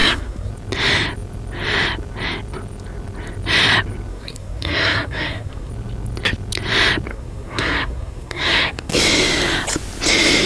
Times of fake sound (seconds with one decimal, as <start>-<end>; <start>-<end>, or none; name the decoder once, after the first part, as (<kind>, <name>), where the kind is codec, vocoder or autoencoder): 0.0-0.5 (codec, SNAC); 4.1-5.7; 7.1-8.9